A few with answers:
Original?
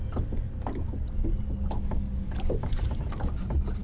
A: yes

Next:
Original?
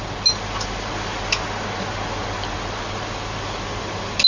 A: yes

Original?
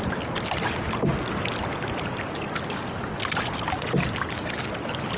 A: yes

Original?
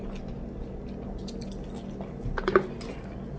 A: yes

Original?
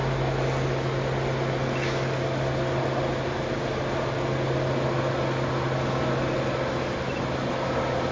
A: yes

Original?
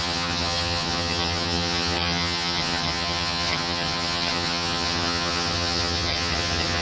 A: no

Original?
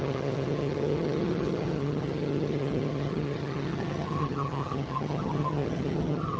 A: no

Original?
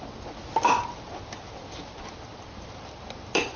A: yes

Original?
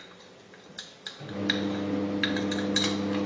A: yes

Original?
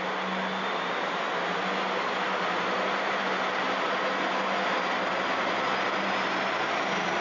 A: yes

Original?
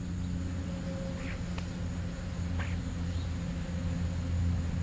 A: yes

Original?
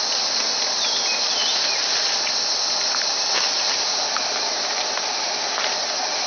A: yes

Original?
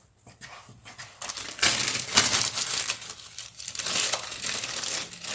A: yes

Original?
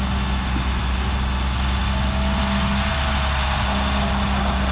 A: yes